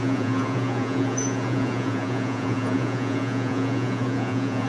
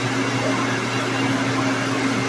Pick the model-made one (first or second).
first